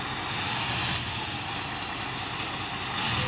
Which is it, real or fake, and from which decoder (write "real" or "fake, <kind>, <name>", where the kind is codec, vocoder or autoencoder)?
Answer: real